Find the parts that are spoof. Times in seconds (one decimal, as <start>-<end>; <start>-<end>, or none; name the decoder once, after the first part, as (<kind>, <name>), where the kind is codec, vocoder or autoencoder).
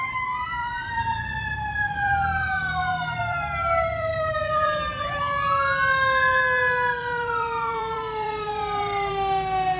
0.6-5.2 (vocoder, BigVGAN v2); 6.3-9.1